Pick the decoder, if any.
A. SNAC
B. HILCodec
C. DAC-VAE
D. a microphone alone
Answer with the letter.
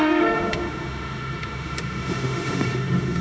C